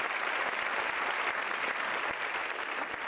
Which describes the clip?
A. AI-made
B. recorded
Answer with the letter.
B